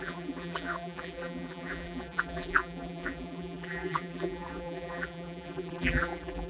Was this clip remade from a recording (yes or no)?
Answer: yes